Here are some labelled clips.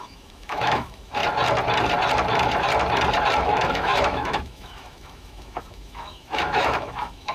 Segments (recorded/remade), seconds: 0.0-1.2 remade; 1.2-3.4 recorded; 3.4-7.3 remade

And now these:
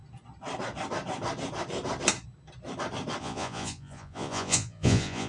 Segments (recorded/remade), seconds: 0.0-3.2 recorded; 3.2-5.3 remade

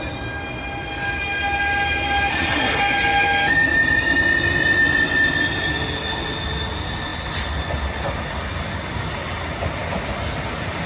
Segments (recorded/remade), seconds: 0.0-2.3 recorded; 2.3-2.8 remade; 2.8-10.9 recorded